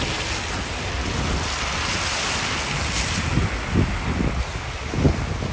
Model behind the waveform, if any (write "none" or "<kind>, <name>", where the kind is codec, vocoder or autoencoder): none